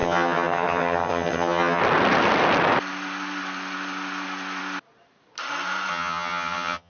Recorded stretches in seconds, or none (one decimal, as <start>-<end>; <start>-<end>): 1.8-5.9